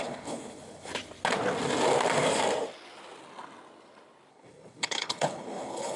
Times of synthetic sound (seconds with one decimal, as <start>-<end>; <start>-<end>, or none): 0.0-0.9; 4.3-6.0

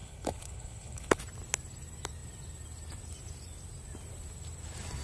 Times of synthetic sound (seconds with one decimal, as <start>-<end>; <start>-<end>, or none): 0.0-1.2